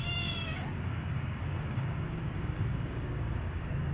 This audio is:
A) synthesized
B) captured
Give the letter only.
A